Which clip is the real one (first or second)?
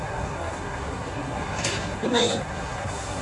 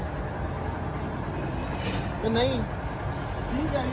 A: second